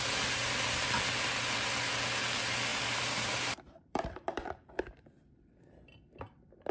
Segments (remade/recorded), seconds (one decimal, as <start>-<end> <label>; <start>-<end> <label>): 0.0-2.7 recorded; 2.7-4.8 remade; 4.8-6.7 recorded